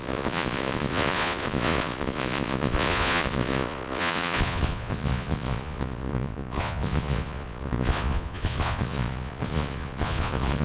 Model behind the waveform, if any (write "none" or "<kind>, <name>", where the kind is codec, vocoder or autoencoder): vocoder, Vocos